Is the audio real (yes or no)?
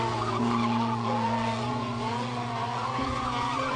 no